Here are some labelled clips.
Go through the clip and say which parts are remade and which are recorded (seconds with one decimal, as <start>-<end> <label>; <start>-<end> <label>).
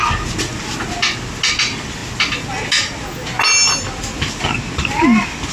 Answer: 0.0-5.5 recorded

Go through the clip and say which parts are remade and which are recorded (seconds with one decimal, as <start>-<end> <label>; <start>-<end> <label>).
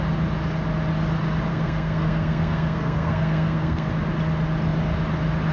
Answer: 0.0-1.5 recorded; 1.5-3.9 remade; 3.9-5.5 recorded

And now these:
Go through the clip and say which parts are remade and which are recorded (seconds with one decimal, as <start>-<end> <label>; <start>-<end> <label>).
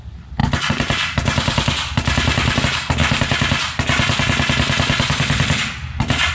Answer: 0.0-6.3 recorded